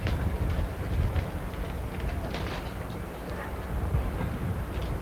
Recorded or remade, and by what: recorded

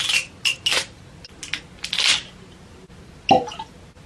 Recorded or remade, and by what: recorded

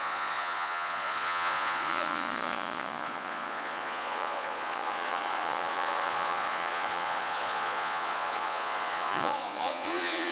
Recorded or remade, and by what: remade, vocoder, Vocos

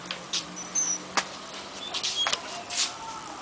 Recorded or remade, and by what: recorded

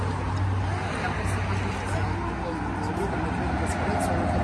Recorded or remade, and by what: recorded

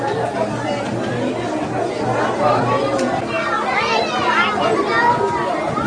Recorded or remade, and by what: recorded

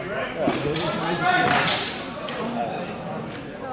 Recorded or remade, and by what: recorded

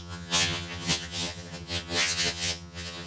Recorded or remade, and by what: remade, vocoder, HiFi-GAN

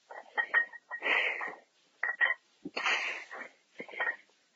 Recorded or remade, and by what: recorded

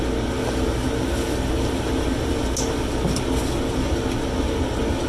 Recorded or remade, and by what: recorded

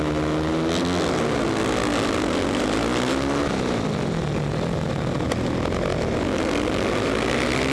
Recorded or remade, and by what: recorded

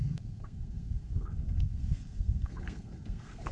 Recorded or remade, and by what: remade, codec, SNAC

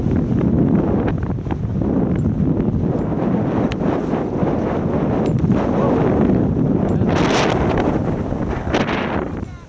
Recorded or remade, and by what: recorded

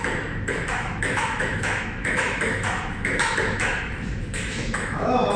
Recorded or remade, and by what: remade, autoencoder, DAC-VAE